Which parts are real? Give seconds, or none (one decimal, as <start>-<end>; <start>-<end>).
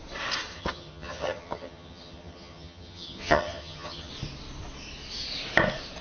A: 0.0-0.5; 4.1-6.0